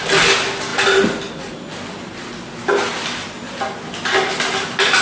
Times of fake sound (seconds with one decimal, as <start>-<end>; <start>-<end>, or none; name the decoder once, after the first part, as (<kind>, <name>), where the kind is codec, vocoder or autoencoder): none